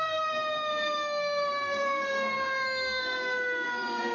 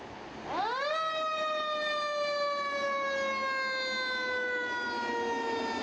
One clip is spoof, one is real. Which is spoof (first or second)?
first